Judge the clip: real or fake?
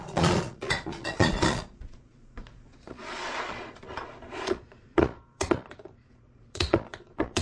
fake